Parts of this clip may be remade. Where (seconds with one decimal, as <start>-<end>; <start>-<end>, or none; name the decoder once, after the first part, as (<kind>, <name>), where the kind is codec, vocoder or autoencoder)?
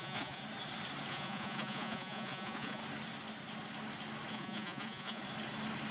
0.0-0.4 (vocoder, Vocos); 1.1-2.8; 4.3-5.2